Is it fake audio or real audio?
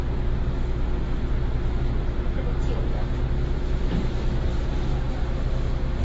real